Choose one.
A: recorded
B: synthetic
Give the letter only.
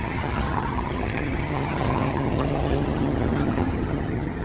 B